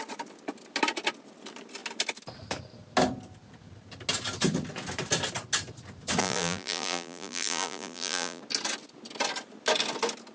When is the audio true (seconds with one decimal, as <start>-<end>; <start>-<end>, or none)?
0.0-6.2; 8.4-10.3